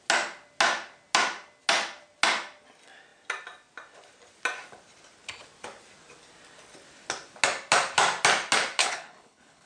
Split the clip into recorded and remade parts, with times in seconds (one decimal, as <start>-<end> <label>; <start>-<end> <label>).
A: 0.0-8.8 recorded; 8.8-9.7 remade